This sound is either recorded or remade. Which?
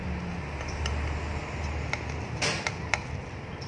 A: recorded